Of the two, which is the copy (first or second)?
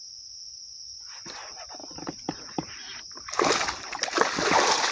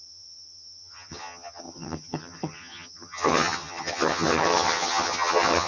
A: second